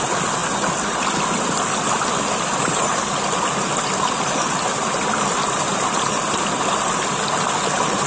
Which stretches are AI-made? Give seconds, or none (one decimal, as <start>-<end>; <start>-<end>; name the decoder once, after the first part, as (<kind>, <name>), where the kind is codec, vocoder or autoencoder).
none